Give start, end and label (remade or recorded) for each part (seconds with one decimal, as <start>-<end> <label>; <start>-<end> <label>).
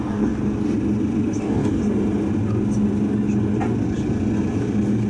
0.0-0.4 remade; 0.4-1.4 recorded; 1.4-1.8 remade; 1.8-5.1 recorded